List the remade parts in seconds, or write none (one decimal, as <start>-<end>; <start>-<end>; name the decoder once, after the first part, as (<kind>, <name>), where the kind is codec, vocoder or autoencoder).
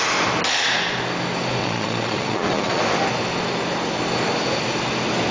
1.6-2.8 (vocoder, Vocos)